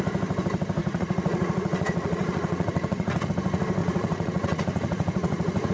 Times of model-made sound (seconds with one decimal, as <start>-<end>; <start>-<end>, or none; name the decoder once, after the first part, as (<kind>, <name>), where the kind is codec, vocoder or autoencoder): 0.8-3.3 (vocoder, Vocos); 3.8-5.7